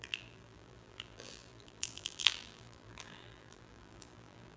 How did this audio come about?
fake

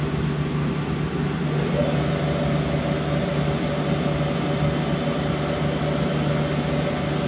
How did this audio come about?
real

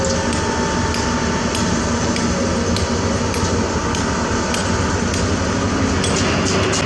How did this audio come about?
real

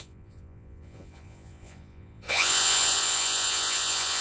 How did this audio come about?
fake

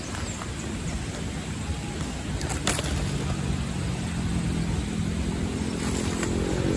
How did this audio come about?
real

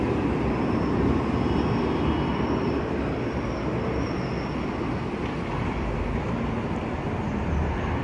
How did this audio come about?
real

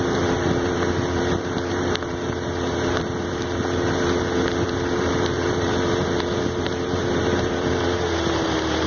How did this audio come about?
fake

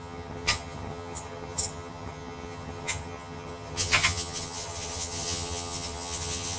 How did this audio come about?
fake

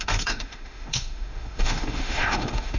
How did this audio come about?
fake